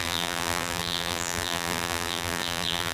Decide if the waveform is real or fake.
fake